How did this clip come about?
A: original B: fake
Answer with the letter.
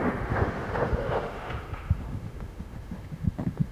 B